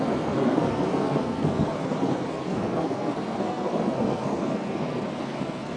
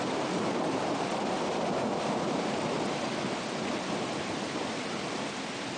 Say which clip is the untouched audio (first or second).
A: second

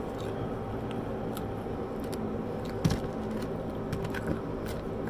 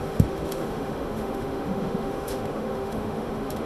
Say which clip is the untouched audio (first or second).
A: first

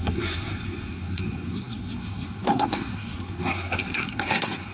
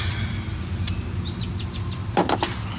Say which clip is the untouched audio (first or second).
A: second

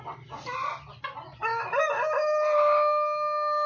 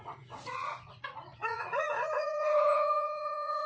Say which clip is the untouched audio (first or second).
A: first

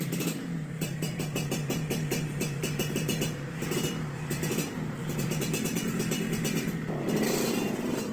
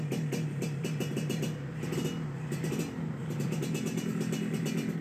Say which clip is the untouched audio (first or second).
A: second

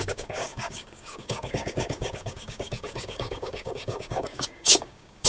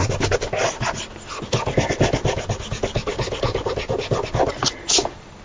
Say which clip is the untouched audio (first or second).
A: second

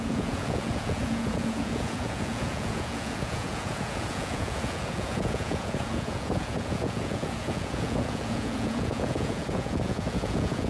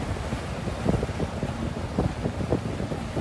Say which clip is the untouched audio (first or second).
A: second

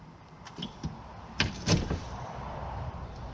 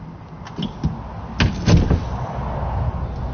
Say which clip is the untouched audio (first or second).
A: second